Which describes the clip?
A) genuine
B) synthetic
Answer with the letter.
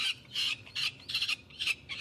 A